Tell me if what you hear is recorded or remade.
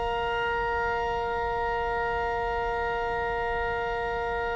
recorded